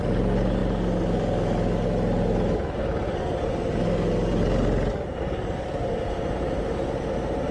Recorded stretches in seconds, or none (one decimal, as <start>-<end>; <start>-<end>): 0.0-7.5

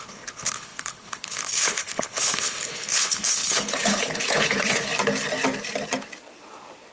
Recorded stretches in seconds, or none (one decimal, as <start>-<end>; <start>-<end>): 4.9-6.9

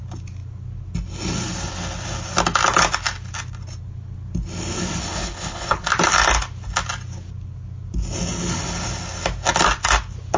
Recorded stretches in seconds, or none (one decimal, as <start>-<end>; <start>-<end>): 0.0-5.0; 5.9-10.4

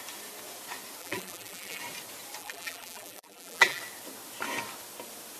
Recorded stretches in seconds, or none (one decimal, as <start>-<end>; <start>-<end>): 0.0-1.0; 1.8-2.4; 3.8-5.4

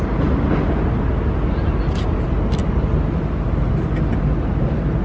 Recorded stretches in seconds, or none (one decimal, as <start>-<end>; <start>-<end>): 0.0-5.0